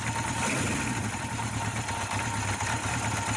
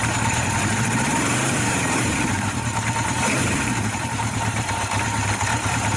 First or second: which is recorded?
first